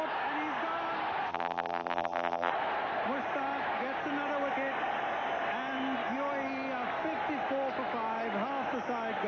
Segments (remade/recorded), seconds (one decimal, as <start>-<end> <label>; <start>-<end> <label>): 0.0-1.3 recorded; 1.3-2.5 remade; 2.5-9.3 recorded